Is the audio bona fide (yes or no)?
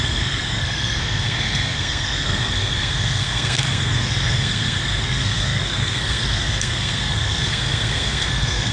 no